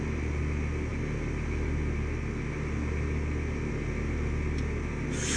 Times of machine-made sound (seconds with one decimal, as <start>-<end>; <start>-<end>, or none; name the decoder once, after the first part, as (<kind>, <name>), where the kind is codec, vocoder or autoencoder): none